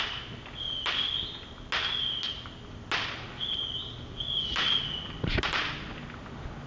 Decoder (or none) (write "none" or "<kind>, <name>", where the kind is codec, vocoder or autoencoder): none